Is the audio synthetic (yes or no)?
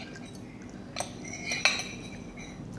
no